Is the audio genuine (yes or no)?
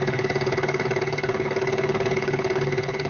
no